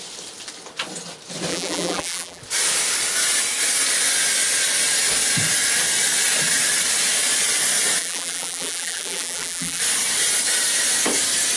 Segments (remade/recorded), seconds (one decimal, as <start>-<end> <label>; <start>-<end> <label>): 0.0-1.5 recorded; 1.5-2.4 remade; 2.4-8.0 recorded; 8.0-9.8 remade; 9.8-11.6 recorded